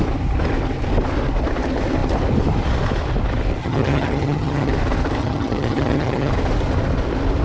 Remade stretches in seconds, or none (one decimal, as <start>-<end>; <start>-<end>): 3.6-4.7; 5.2-6.3